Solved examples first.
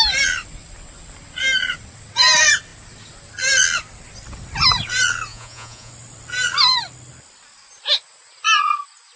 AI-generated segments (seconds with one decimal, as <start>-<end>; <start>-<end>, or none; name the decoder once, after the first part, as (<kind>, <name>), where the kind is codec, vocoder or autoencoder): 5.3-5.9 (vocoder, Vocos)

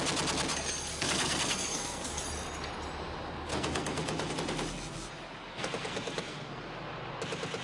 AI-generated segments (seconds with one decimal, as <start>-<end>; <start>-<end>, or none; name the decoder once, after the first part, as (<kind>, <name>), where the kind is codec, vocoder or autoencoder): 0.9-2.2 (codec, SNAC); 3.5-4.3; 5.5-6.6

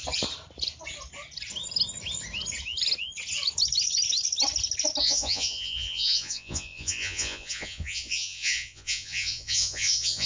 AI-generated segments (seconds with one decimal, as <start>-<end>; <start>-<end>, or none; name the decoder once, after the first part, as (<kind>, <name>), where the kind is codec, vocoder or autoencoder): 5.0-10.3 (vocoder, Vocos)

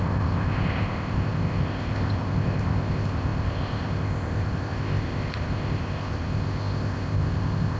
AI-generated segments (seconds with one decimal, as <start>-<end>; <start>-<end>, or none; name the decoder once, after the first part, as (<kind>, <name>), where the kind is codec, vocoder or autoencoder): 0.0-7.8 (codec, ZipCodec)

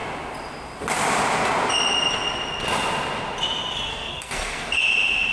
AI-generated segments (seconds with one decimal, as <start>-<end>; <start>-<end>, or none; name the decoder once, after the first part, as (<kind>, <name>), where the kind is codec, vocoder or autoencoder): 3.9-4.7 (codec, SNAC)